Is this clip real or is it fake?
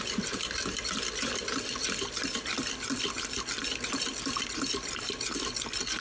real